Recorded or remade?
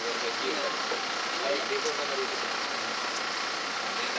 recorded